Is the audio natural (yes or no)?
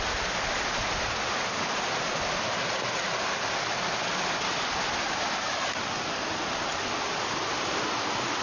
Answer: yes